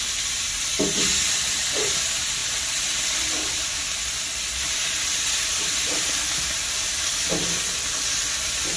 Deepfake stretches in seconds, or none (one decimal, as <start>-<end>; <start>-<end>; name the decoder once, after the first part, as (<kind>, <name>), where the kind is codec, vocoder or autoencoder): none